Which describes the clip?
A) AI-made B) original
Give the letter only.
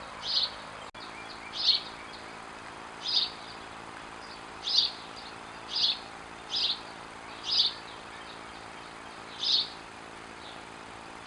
B